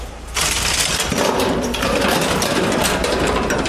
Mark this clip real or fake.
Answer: fake